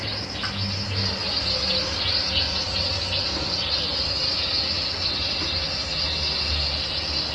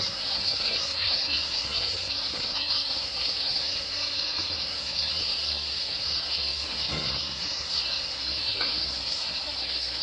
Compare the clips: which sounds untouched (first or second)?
first